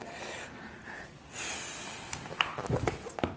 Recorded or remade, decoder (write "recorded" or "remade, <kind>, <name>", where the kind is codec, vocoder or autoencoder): recorded